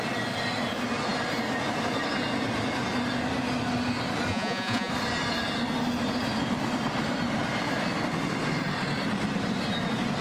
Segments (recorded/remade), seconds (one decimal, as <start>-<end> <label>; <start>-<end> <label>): 0.0-4.3 recorded; 4.3-4.9 remade; 4.9-10.2 recorded